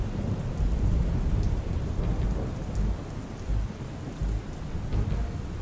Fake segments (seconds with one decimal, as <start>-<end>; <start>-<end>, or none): none